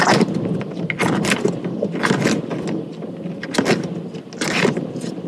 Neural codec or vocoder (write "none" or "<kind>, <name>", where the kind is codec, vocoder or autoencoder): none